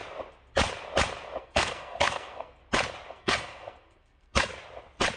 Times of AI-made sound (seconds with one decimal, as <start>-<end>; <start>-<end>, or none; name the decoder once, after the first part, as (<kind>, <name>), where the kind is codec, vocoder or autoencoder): 1.4-2.6 (codec, SNAC); 3.1-4.5